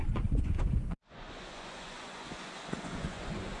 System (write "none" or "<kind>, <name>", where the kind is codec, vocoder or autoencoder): vocoder, Vocos